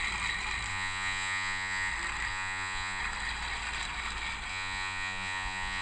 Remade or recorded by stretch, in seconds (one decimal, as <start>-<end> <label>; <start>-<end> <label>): 0.0-0.7 recorded; 0.7-1.9 remade; 1.9-2.3 recorded; 2.3-3.0 remade; 3.0-4.5 recorded; 4.5-5.8 remade